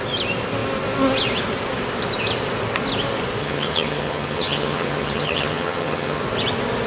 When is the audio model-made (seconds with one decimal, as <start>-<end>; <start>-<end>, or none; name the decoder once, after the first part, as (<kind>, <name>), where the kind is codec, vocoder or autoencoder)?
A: 3.4-6.2 (vocoder, HiFi-GAN)